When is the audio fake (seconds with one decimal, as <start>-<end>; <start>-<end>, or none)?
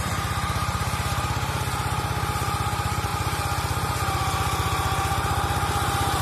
0.0-3.1